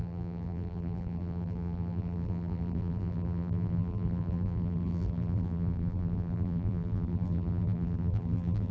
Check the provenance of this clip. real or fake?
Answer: fake